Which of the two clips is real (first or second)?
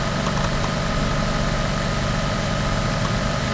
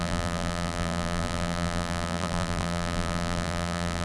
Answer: first